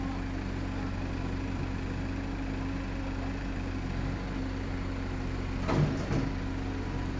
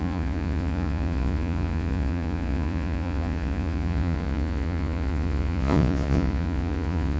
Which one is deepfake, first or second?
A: second